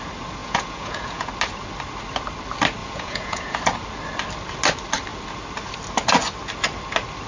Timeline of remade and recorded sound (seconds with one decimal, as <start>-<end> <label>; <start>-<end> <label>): 0.0-0.4 recorded; 0.4-1.3 remade; 1.3-2.8 recorded; 2.8-3.6 remade; 3.6-7.3 recorded